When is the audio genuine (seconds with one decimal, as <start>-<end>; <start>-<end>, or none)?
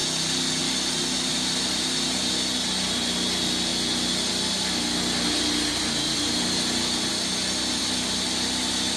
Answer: 0.0-9.0